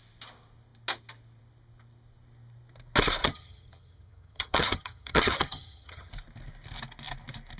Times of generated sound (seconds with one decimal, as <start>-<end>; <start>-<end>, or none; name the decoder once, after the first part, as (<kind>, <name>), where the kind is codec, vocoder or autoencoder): 3.2-6.1 (vocoder, HiFi-GAN)